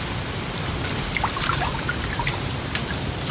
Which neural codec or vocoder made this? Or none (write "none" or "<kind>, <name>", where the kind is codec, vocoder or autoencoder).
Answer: none